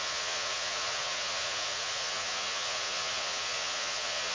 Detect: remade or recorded remade